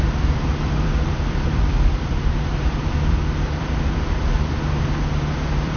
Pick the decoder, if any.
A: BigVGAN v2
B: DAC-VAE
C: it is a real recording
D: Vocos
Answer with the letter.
A